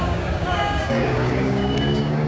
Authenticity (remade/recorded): remade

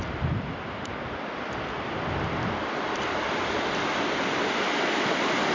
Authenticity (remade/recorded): remade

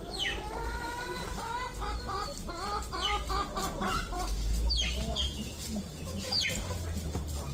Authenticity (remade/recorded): recorded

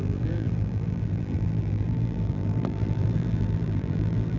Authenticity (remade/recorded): remade